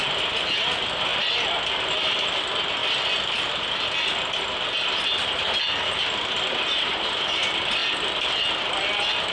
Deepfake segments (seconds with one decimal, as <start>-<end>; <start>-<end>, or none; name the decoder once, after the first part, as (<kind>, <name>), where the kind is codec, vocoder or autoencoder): none

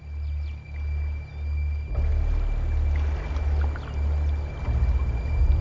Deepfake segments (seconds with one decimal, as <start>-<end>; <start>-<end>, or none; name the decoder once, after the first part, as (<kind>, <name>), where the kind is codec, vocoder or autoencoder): none

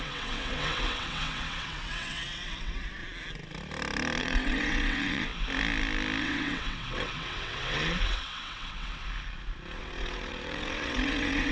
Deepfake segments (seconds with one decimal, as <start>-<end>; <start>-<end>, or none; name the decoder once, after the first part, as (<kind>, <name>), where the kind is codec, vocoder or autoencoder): 0.0-3.0 (vocoder, WaveNeXt); 4.2-5.3; 6.2-9.0; 9.8-11.5

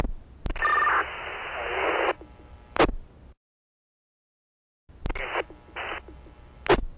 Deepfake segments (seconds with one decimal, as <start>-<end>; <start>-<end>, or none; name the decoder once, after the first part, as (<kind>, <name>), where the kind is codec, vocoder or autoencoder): none

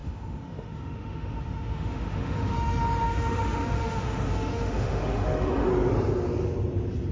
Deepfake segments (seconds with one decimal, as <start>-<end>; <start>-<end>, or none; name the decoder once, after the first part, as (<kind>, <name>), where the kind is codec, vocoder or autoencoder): 0.0-5.7 (autoencoder, DAC-VAE)

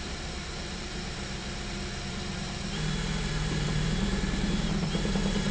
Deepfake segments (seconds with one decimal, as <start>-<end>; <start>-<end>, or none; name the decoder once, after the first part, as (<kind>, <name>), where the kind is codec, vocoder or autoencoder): 0.0-5.5 (vocoder, BigVGAN v2)

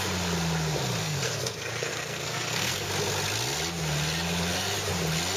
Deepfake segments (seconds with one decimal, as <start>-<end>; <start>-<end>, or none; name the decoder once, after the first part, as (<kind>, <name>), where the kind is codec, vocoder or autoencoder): 1.0-2.9 (codec, SNAC)

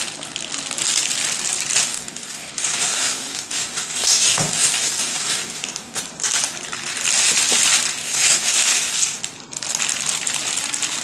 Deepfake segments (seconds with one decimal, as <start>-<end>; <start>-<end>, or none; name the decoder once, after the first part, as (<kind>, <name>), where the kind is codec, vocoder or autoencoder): 1.9-6.0 (codec, DAC); 8.0-9.2